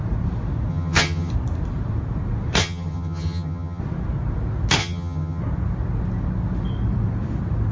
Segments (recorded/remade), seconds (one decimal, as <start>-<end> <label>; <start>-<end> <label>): 0.0-0.7 recorded; 0.7-1.3 remade; 1.3-2.6 recorded; 2.6-3.8 remade; 3.8-4.8 recorded; 4.8-5.4 remade; 5.4-7.7 recorded